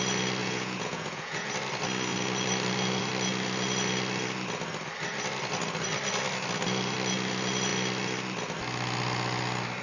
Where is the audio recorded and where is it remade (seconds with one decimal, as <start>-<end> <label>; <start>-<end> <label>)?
0.0-0.4 recorded; 0.4-1.5 remade; 1.5-9.8 recorded